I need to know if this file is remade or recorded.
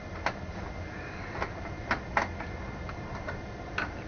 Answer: recorded